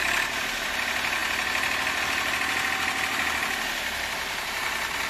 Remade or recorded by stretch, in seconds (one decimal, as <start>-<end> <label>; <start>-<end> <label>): 0.0-5.1 recorded